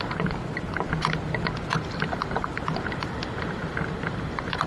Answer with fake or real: real